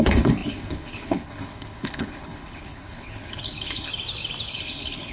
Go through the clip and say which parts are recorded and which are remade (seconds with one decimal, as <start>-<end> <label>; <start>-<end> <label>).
0.0-3.9 remade; 3.9-4.5 recorded; 4.5-5.1 remade